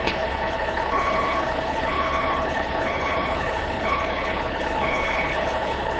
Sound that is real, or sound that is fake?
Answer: fake